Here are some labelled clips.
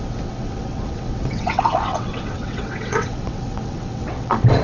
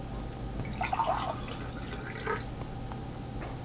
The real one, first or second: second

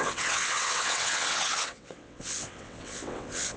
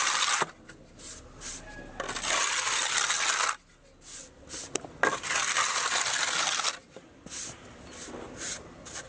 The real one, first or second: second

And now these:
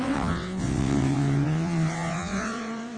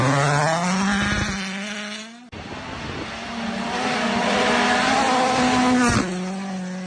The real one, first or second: second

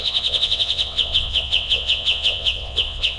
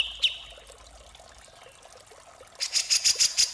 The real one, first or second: second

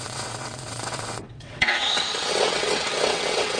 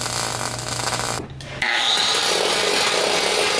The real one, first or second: second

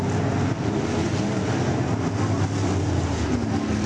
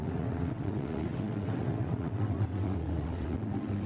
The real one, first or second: first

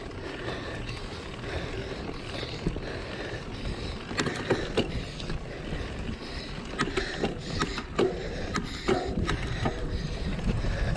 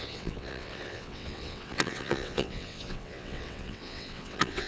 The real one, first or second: first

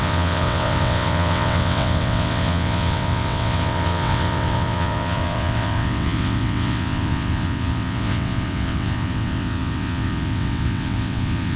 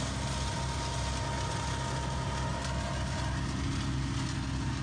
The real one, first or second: second